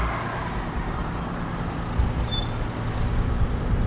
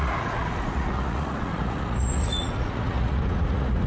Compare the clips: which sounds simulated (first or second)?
second